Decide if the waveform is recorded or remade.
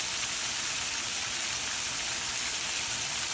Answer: recorded